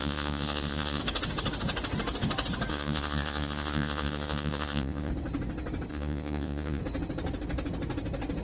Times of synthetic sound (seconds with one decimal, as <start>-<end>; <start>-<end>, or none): 0.0-1.0; 2.7-5.1; 5.9-6.8